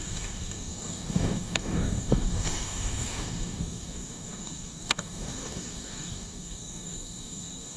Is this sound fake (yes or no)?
yes